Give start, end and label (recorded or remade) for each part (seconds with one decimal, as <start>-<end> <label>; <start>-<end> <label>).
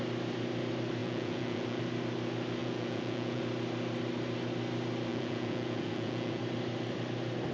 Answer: 0.0-1.0 recorded; 1.0-1.8 remade; 1.8-2.6 recorded; 2.6-3.4 remade; 3.4-5.1 recorded; 5.1-6.4 remade; 6.4-7.5 recorded